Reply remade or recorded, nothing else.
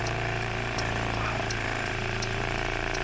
remade